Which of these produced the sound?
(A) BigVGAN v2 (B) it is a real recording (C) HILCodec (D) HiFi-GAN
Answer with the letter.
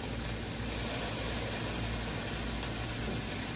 B